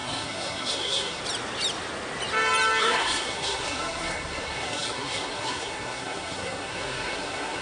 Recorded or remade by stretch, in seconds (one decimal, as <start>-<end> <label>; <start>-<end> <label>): 0.0-1.2 remade; 1.2-2.8 recorded; 2.8-7.6 remade